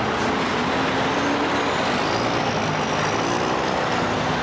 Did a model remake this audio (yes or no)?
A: no